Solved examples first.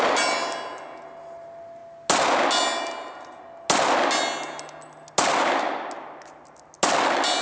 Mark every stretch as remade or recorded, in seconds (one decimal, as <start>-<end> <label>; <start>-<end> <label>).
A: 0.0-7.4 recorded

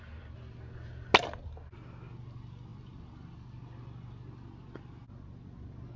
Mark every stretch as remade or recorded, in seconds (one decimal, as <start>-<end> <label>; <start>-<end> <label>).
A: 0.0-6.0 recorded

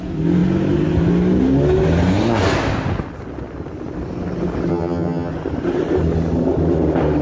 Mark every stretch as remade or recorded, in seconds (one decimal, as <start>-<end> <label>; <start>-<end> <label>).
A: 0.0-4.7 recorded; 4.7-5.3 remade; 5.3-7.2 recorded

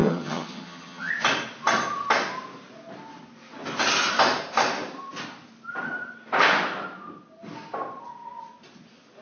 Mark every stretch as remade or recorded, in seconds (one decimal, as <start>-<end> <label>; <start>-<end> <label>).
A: 0.0-1.1 remade; 1.1-9.2 recorded